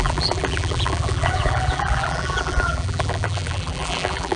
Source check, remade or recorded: remade